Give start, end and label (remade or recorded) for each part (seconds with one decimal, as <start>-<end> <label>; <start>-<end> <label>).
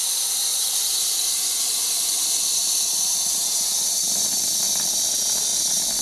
0.0-0.5 recorded; 0.5-3.8 remade; 3.8-6.0 recorded